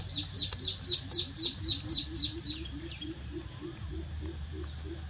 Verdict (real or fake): fake